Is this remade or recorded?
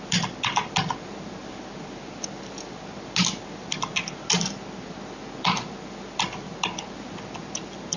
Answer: recorded